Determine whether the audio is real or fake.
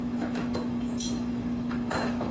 fake